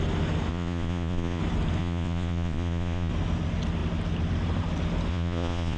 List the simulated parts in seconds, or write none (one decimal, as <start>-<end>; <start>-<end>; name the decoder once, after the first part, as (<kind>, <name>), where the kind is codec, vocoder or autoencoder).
0.5-1.4 (vocoder, Vocos); 1.8-3.1; 5.1-5.8